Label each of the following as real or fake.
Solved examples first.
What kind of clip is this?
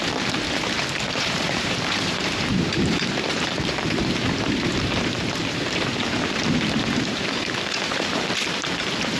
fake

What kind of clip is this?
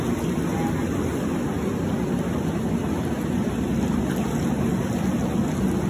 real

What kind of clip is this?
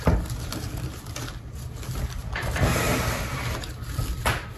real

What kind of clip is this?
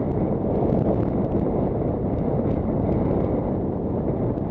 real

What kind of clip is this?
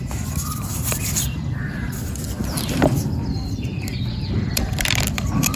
fake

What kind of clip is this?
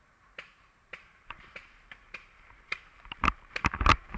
fake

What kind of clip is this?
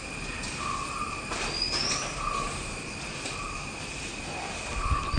real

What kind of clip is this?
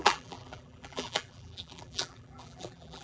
fake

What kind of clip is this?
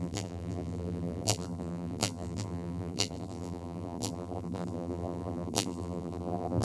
fake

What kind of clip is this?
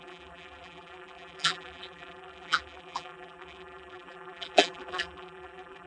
fake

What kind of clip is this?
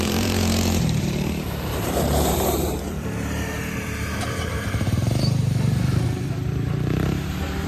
fake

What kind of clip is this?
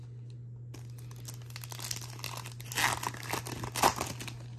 real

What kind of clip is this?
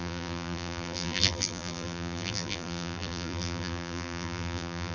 fake